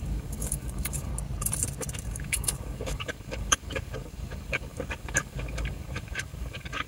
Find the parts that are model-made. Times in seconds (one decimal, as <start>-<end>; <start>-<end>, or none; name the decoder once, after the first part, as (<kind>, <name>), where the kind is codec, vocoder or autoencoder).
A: 0.0-1.1 (codec, DAC); 2.0-6.9